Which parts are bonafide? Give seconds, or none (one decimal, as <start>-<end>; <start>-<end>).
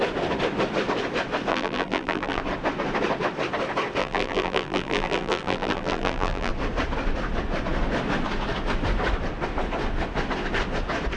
0.0-1.5; 2.4-4.0; 6.5-11.2